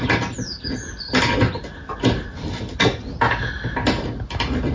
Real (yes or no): yes